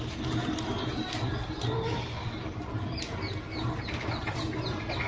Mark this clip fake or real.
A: real